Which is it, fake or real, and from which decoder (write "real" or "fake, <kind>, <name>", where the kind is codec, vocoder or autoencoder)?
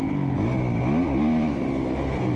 real